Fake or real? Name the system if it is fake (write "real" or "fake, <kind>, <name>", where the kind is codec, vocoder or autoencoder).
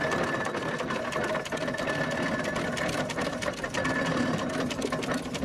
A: real